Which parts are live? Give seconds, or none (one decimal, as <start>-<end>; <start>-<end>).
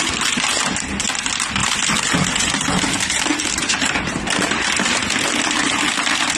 0.0-6.4